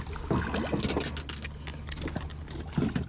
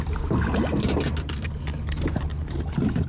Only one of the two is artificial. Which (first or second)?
second